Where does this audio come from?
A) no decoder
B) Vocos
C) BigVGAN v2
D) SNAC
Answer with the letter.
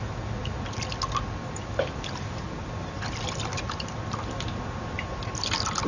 A